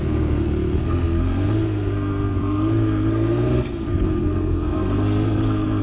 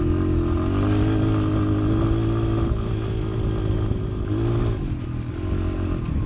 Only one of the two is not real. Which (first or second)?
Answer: first